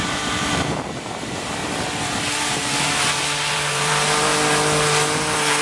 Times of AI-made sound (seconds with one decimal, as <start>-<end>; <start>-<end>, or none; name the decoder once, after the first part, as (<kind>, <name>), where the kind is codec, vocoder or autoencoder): 0.0-1.6 (vocoder, BigVGAN v2); 2.2-4.3